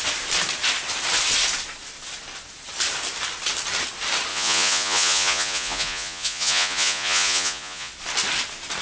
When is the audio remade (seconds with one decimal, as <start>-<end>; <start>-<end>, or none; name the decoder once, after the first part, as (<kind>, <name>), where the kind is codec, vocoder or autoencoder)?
4.3-7.9 (vocoder, Vocos)